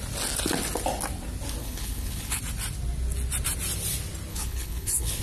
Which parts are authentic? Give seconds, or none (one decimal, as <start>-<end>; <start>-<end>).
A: 0.0-1.6; 2.4-4.3